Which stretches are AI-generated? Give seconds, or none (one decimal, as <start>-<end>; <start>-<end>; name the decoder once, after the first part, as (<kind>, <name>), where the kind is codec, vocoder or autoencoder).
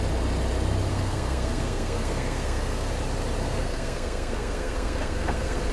0.9-2.9 (codec, SNAC); 3.4-5.7